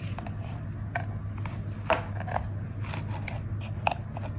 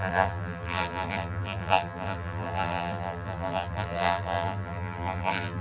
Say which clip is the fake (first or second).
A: second